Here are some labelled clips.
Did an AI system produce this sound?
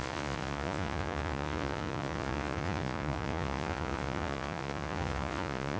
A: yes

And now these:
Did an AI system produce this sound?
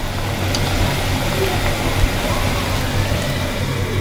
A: no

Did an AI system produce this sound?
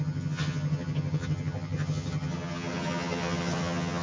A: yes